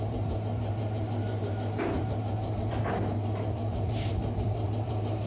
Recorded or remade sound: remade